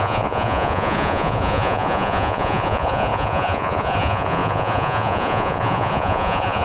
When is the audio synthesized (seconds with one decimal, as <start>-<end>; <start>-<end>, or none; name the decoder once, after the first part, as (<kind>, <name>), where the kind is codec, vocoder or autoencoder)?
0.0-6.6 (vocoder, Vocos)